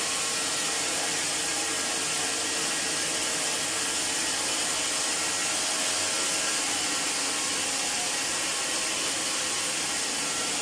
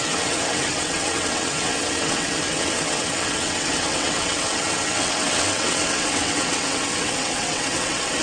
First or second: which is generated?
second